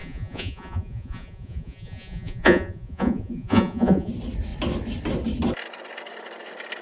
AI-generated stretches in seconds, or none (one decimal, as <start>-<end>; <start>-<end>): 0.0-4.1